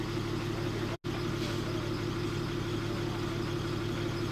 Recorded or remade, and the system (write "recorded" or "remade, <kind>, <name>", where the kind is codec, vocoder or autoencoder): recorded